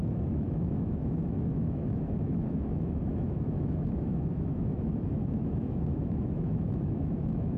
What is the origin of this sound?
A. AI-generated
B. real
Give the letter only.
A